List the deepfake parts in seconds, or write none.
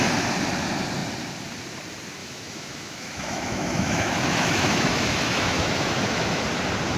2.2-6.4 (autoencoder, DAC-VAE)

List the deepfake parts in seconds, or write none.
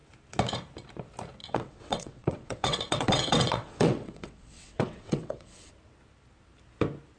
1.4-5.7 (vocoder, WaveNeXt)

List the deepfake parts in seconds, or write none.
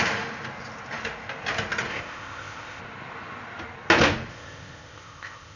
1.9-2.8 (codec, ZipCodec); 4.3-5.6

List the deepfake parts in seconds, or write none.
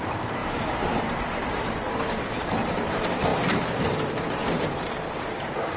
0.4-1.0 (vocoder, BigVGAN v2); 3.3-5.8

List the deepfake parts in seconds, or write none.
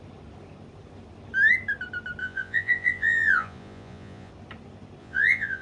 2.2-4.3 (vocoder, Vocos); 5.0-5.6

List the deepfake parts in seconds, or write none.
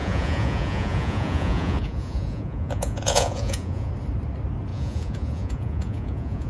0.0-3.9 (vocoder, Vocos); 4.7-6.5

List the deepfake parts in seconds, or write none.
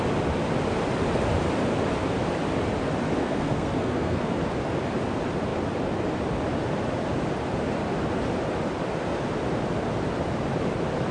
3.2-4.3 (codec, SNAC)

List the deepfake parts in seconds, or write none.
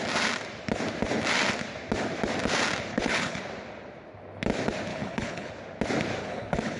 2.9-3.4 (codec, HILCodec); 4.9-5.5; 6.2-6.8